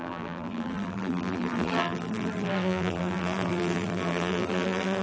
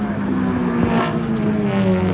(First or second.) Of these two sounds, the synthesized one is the first